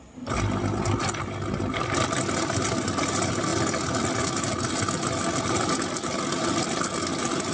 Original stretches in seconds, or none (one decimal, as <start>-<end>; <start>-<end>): 0.0-7.5